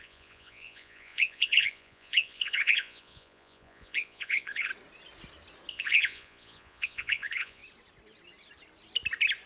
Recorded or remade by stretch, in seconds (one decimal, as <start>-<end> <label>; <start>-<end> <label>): 0.0-4.7 remade; 4.7-5.7 recorded; 5.7-7.6 remade; 7.6-9.5 recorded